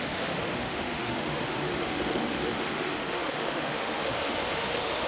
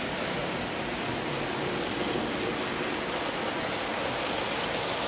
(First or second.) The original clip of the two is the second